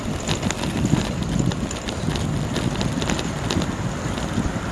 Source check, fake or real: fake